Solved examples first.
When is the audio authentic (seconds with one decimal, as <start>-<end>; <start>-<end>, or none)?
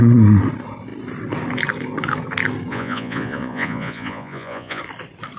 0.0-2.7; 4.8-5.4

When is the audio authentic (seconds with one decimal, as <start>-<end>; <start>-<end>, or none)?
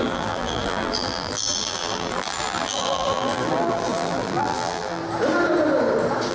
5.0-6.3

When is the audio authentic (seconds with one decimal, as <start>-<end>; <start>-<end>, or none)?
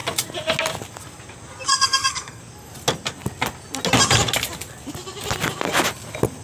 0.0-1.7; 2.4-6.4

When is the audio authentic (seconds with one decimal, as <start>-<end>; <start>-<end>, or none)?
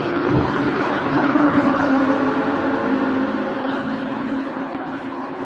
2.0-3.6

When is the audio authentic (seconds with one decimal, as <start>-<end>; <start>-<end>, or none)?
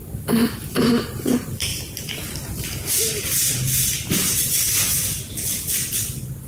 0.0-1.7; 4.5-6.5